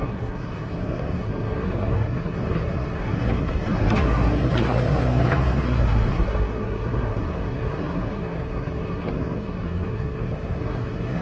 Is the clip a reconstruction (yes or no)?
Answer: yes